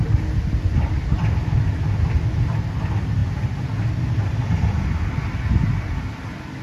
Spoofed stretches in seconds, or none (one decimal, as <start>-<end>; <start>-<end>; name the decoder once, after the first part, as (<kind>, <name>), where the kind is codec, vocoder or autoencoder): none